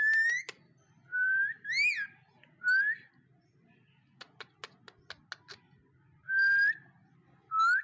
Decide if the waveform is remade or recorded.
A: recorded